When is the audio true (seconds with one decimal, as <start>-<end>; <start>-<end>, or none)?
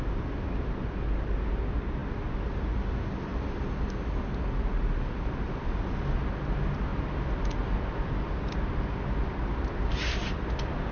0.0-10.9